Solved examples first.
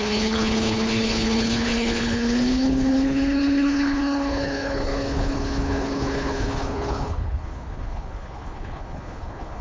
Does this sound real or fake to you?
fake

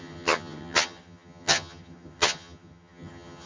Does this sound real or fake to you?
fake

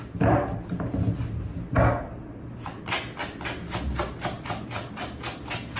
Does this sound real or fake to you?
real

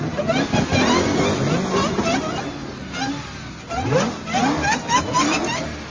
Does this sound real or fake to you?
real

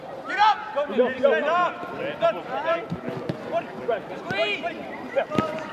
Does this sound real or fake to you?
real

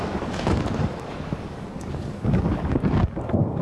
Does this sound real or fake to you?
fake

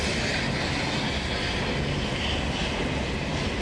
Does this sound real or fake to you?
real